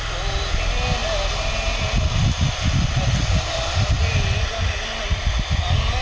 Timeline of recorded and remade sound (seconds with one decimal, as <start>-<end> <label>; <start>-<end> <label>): 0.0-6.0 recorded